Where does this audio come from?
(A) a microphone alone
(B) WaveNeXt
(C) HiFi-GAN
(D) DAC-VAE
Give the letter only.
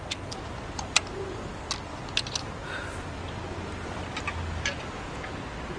A